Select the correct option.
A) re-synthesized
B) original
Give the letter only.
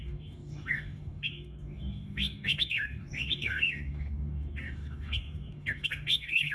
A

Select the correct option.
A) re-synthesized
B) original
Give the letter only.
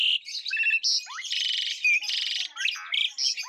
B